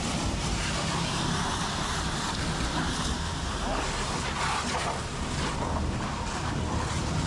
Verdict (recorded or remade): recorded